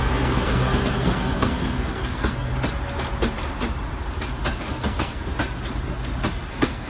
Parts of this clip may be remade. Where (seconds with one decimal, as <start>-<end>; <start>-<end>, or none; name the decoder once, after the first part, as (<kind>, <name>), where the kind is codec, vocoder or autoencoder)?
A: 0.0-2.5 (codec, SNAC); 4.7-5.3; 6.5-6.9